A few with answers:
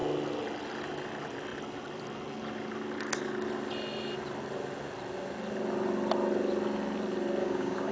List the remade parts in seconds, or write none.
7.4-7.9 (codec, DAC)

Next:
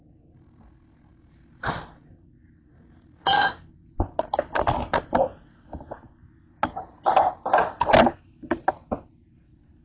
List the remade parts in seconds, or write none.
none

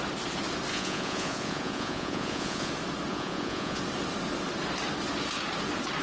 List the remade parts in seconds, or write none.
0.7-2.7 (vocoder, Vocos); 3.1-3.8

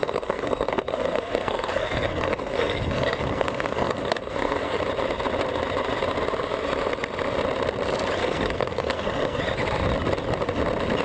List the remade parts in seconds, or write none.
0.0-4.8 (codec, SNAC); 8.2-9.4